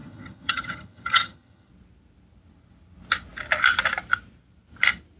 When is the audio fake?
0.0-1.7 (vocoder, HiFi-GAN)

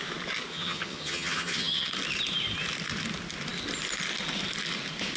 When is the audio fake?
0.5-1.9 (vocoder, HiFi-GAN)